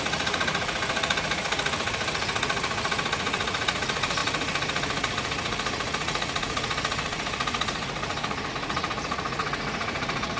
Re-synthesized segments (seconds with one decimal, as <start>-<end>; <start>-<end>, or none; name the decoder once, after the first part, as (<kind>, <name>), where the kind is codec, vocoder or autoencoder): 0.0-10.4 (vocoder, Vocos)